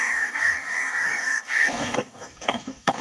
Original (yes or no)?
no